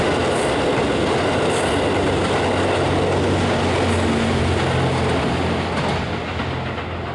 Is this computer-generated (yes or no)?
no